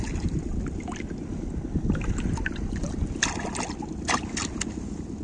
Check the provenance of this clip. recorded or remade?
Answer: recorded